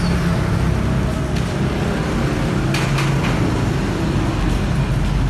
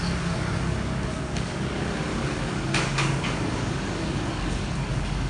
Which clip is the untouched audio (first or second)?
first